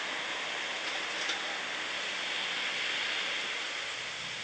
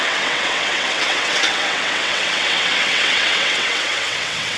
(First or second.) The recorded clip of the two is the first